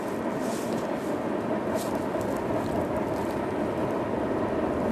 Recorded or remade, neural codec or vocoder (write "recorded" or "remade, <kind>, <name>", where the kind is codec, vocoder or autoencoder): recorded